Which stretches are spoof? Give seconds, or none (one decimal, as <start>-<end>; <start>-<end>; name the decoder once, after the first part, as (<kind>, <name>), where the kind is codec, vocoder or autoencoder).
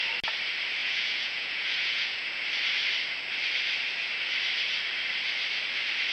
0.8-2.4 (vocoder, Vocos)